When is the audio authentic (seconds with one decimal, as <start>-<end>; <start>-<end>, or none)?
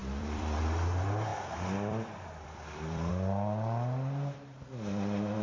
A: 0.6-1.3; 3.1-5.4